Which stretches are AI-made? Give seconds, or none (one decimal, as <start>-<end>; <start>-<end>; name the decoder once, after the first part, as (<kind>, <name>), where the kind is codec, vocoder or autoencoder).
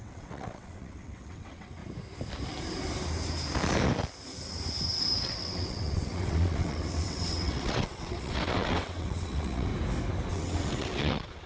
0.0-1.8 (vocoder, WaveNeXt); 5.2-9.7; 10.3-11.5